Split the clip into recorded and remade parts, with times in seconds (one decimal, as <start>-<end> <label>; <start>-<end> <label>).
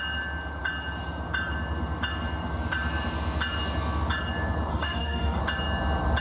0.0-4.7 recorded; 4.7-5.4 remade; 5.4-6.2 recorded